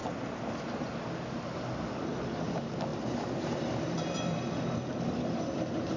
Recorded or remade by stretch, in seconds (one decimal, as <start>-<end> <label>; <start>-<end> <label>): 0.0-2.9 recorded; 2.9-4.9 remade; 4.9-6.0 recorded